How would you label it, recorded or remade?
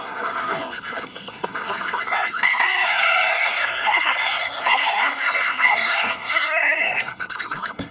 remade